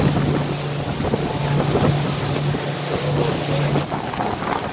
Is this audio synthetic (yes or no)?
no